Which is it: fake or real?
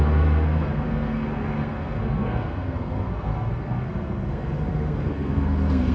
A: fake